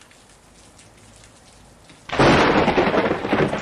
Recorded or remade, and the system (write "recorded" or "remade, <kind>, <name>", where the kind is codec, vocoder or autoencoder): recorded